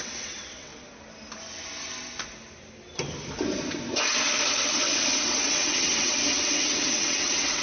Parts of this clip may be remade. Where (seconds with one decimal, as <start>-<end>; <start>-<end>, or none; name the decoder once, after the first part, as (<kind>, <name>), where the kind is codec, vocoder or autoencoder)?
0.0-0.7 (vocoder, WaveNeXt); 4.6-7.6